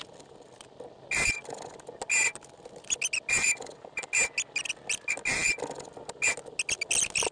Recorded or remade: recorded